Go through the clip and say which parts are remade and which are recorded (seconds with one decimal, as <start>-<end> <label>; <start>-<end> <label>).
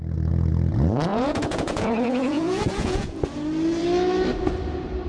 0.0-1.1 recorded; 1.1-3.2 remade; 3.2-5.1 recorded